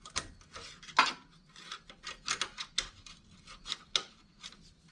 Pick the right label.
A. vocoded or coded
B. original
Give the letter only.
B